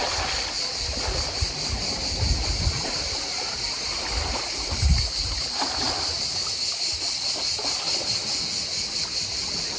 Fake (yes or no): no